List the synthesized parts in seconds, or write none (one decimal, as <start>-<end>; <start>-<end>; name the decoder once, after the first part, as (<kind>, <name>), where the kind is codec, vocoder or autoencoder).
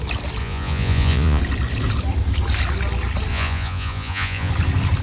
0.4-1.4 (vocoder, Vocos); 3.3-4.5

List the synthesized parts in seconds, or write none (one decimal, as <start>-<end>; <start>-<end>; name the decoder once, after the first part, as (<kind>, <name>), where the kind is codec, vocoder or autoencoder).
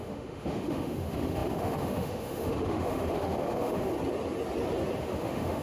0.0-3.9 (autoencoder, DAC-VAE); 5.0-5.6